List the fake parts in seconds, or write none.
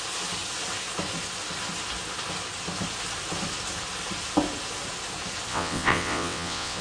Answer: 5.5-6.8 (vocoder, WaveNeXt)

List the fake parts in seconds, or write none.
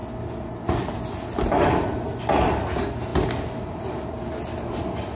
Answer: none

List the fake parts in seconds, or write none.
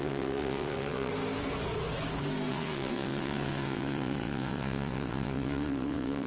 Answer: 0.0-1.1 (vocoder, WaveNeXt); 2.5-6.3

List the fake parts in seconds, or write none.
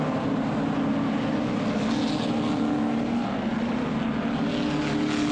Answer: none